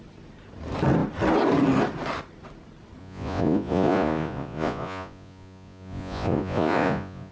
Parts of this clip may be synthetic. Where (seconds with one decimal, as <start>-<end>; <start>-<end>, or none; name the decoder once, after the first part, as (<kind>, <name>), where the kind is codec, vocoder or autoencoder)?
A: 3.0-7.3 (vocoder, Vocos)